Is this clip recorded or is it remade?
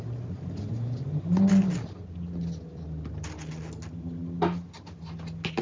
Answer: recorded